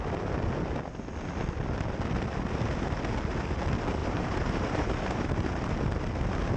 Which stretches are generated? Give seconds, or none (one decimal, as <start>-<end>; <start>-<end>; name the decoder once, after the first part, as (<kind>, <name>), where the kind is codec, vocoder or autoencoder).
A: 4.0-5.5 (vocoder, BigVGAN v2)